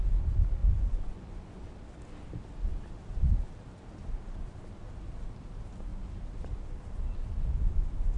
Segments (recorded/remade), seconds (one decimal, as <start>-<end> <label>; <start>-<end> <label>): 0.0-0.6 recorded; 0.6-1.7 remade; 1.7-8.2 recorded